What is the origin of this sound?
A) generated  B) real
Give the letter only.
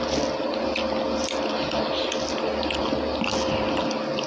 B